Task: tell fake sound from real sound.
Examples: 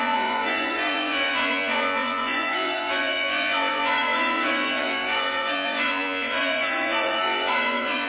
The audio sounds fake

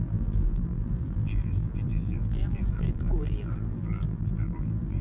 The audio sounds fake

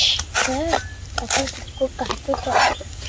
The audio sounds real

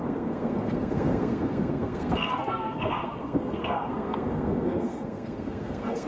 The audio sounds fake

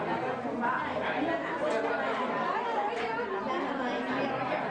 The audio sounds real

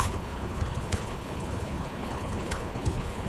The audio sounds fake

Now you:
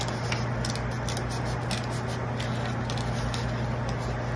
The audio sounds real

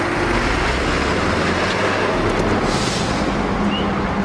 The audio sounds real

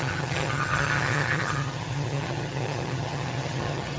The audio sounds fake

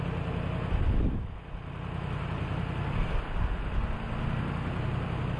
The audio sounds real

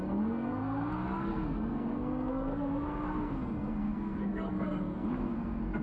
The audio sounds fake